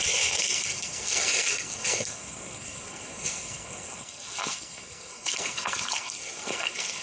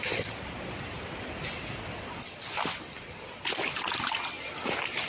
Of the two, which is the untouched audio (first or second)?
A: second